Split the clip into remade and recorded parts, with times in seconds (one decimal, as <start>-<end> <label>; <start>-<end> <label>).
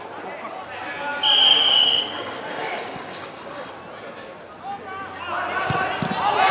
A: 0.0-1.5 recorded; 1.5-3.7 remade; 3.7-6.5 recorded